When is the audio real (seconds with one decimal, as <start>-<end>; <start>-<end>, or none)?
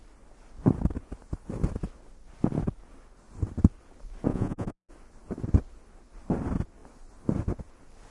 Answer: 0.0-4.3; 4.9-8.1